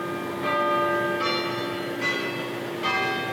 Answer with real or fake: real